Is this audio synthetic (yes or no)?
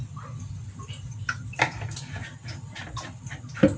yes